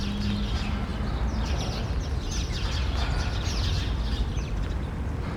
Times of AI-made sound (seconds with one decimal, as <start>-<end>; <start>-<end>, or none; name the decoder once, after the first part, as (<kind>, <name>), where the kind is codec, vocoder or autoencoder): none